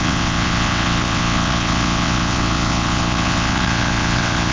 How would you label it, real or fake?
fake